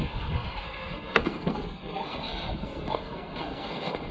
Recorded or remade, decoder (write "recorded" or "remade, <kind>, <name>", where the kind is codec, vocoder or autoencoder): remade, codec, SNAC